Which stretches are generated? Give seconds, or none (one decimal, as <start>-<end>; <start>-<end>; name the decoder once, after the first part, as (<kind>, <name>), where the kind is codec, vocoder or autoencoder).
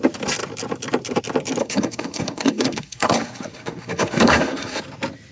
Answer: 1.6-4.8 (codec, SNAC)